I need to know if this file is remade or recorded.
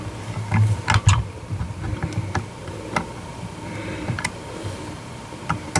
recorded